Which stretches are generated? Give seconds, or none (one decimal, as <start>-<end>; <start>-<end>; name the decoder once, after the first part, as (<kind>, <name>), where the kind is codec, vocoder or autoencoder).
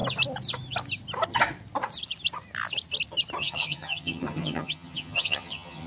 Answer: 3.4-5.9 (vocoder, HiFi-GAN)